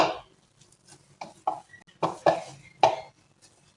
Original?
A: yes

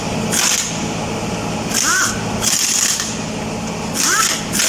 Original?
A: yes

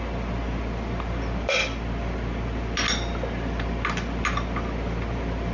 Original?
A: yes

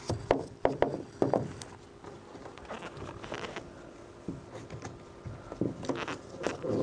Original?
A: yes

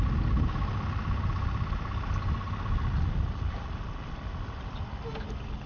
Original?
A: yes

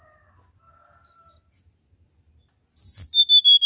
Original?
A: yes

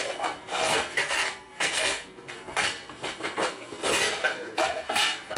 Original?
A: no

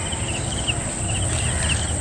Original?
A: yes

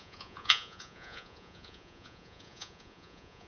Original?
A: no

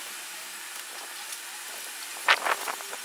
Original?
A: yes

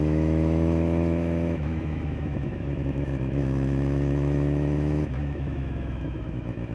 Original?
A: no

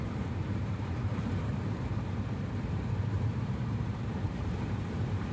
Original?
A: no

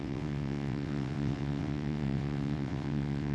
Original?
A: no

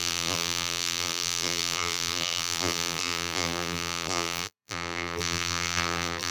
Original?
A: no